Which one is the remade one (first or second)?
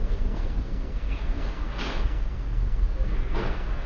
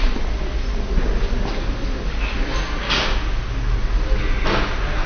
first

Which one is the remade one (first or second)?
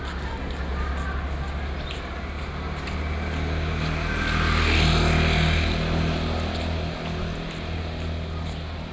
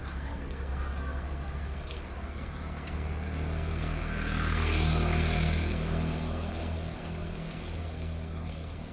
second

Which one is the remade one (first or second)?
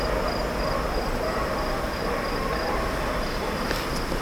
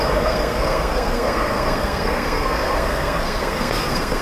second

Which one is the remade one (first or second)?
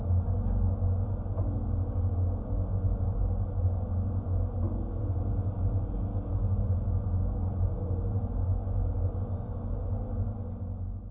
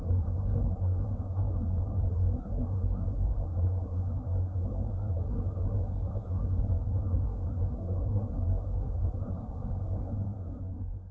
second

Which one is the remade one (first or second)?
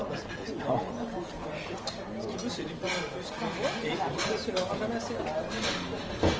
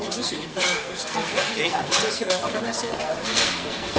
second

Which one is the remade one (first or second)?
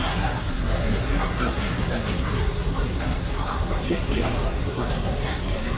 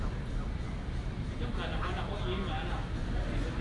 first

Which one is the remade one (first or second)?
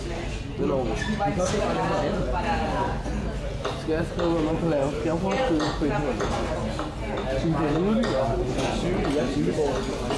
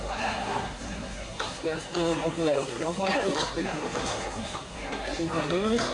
second